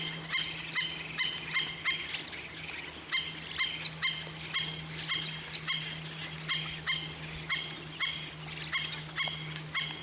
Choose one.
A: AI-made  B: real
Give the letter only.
B